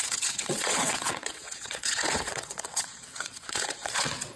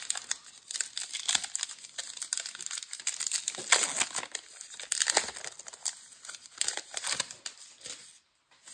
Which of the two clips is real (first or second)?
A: second